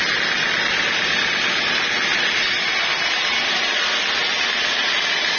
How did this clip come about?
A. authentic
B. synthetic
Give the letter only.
A